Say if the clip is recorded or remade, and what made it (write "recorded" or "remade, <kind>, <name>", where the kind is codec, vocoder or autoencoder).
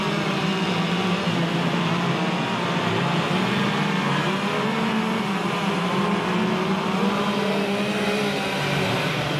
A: recorded